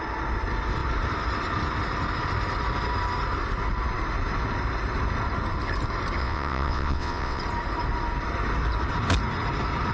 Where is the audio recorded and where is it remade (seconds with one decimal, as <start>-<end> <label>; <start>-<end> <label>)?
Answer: 0.0-6.2 recorded; 6.2-7.4 remade; 7.4-9.9 recorded

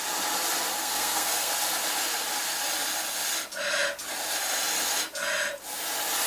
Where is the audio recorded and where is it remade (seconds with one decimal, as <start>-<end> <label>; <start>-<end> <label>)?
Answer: 0.0-0.8 recorded; 0.8-1.5 remade; 1.5-6.3 recorded

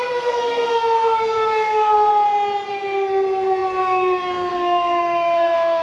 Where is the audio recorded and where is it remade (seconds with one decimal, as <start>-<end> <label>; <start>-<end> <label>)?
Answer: 0.0-2.1 remade; 2.1-2.7 recorded; 2.7-5.8 remade

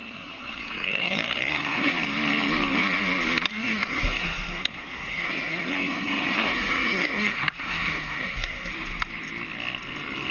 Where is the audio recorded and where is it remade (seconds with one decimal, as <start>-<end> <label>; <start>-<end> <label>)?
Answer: 0.0-1.9 remade; 1.9-3.5 recorded; 3.5-8.7 remade; 8.7-10.3 recorded

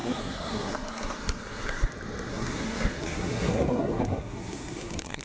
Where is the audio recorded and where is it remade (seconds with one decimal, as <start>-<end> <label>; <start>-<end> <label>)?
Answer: 0.0-1.9 remade; 1.9-2.3 recorded; 2.3-5.2 remade

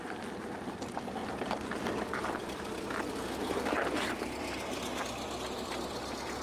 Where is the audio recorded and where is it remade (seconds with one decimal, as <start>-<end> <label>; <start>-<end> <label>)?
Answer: 0.0-6.4 recorded

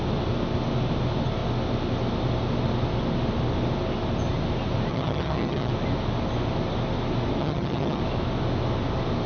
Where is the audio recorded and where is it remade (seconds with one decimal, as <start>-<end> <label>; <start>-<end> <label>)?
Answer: 0.0-4.9 recorded; 4.9-5.7 remade; 5.7-7.4 recorded; 7.4-8.0 remade; 8.0-9.3 recorded

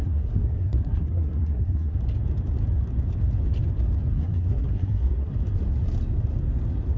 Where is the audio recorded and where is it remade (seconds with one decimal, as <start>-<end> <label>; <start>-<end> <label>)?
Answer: 0.0-2.0 remade; 2.0-4.1 recorded; 4.1-5.3 remade; 5.3-7.0 recorded